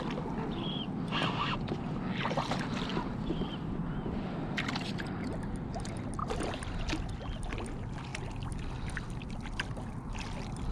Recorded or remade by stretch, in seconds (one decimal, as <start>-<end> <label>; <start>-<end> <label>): 0.0-2.9 recorded; 2.9-3.8 remade; 3.8-6.2 recorded; 6.2-6.8 remade; 6.8-10.7 recorded